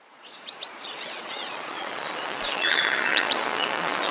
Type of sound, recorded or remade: remade